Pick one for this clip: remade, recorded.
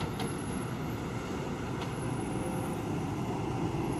recorded